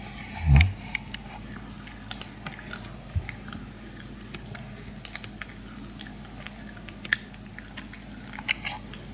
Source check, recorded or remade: recorded